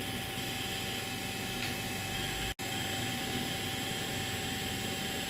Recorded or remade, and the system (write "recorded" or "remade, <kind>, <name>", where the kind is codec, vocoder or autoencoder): recorded